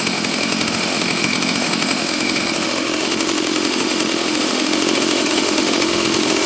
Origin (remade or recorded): remade